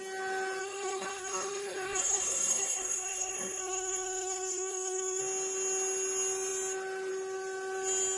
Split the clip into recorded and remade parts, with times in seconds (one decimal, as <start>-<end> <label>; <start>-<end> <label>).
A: 0.0-0.6 recorded; 0.6-5.2 remade; 5.2-8.2 recorded